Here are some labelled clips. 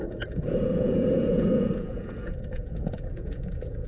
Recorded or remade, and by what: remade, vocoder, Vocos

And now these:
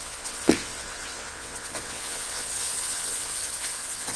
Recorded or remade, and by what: remade, vocoder, WaveNeXt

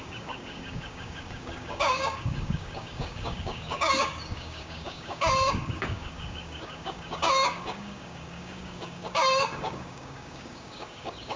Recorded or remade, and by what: remade, codec, DAC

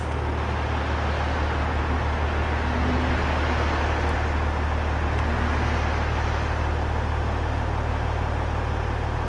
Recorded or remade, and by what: recorded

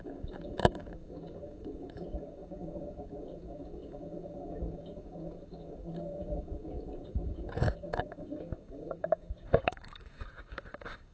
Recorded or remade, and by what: remade, codec, DAC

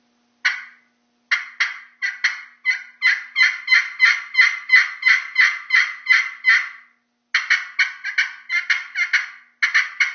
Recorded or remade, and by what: recorded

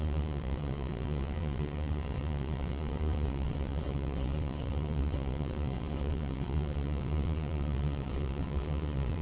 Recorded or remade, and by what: remade, vocoder, WaveNeXt